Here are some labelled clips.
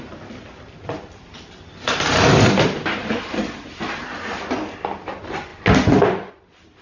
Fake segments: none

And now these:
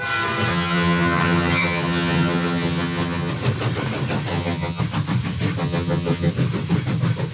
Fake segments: 0.5-3.3 (vocoder, HiFi-GAN); 4.3-4.8; 5.6-6.3

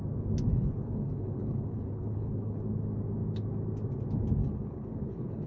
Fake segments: 0.5-2.6 (codec, HILCodec); 4.4-5.5

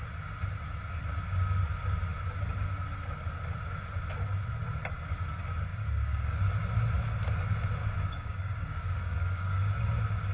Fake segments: 5.7-6.4 (codec, DAC); 7.8-9.8

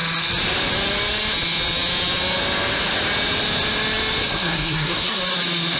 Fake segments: 4.2-5.2 (codec, SNAC)

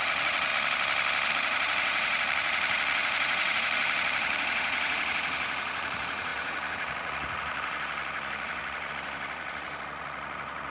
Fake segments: 0.0-0.5 (vocoder, Vocos); 1.3-10.7

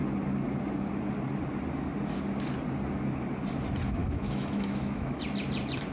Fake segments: 4.0-5.2 (autoencoder, DAC-VAE)

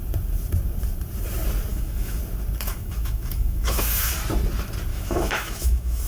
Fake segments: 1.7-2.2 (autoencoder, DAC-VAE); 2.7-4.1; 4.9-6.1